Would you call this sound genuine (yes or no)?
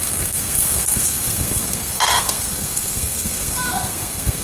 no